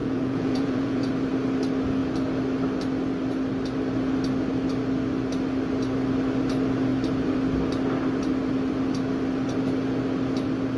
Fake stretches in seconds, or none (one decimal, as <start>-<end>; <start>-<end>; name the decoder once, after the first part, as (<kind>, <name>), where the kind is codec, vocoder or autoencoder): 0.0-1.1 (vocoder, Vocos)